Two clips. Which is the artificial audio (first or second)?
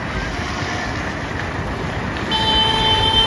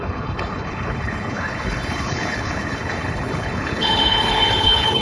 second